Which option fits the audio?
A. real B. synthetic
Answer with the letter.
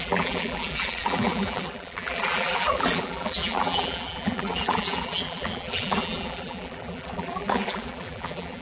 B